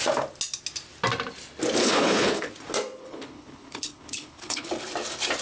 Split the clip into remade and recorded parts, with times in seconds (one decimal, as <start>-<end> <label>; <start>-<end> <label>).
0.0-1.8 recorded; 1.8-2.5 remade; 2.5-3.0 recorded; 3.0-4.7 remade; 4.7-5.4 recorded